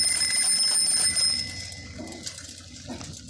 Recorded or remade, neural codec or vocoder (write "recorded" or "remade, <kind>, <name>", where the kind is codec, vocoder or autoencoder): recorded